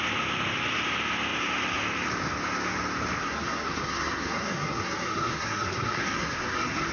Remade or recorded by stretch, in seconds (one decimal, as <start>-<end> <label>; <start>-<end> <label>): 0.0-3.2 recorded; 3.2-6.9 remade